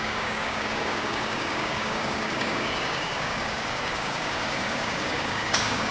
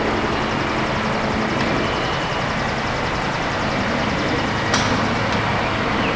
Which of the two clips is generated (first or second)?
first